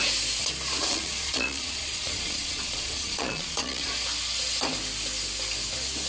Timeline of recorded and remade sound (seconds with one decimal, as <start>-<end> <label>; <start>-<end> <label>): 0.0-0.8 recorded; 0.8-3.9 remade; 3.9-6.1 recorded